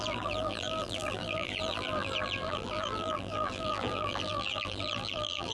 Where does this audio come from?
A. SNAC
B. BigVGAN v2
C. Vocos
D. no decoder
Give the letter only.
B